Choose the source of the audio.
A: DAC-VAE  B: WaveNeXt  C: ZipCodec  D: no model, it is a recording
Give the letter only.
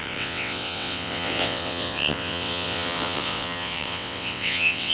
B